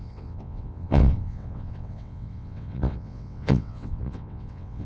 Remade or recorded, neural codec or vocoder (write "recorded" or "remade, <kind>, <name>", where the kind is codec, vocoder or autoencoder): remade, vocoder, WaveNeXt